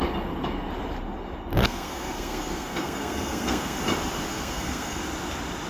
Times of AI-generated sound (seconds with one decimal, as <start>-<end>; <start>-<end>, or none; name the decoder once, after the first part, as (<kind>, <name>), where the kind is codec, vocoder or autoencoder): 1.6-3.8 (codec, SNAC); 4.3-5.0